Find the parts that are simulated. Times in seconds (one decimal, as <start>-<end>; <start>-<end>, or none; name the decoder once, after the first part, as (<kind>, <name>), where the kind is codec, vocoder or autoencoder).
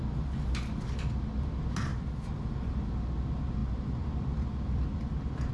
1.9-2.9 (vocoder, BigVGAN v2); 3.6-5.5